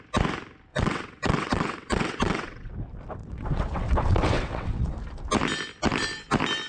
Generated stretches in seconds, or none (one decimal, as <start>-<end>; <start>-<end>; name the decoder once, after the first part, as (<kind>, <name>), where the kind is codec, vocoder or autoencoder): 0.7-2.7 (vocoder, WaveNeXt); 3.2-4.9